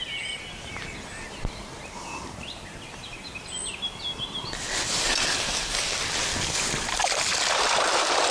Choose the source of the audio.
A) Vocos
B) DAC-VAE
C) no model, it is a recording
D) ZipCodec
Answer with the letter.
C